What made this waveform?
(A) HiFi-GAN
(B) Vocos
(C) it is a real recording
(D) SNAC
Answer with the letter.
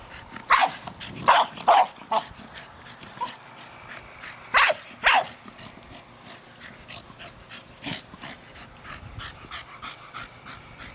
C